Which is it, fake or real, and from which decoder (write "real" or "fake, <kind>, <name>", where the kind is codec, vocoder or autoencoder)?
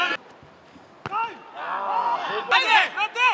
real